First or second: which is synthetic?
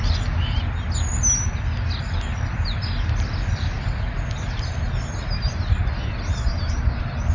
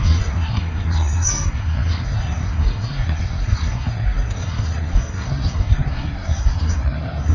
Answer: second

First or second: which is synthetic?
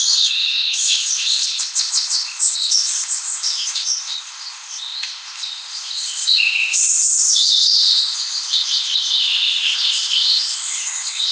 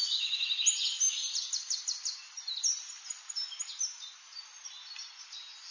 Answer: first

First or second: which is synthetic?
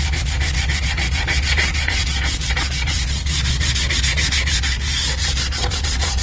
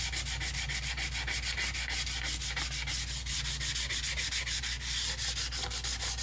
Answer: first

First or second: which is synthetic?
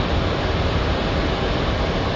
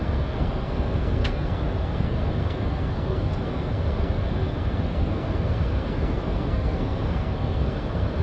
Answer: second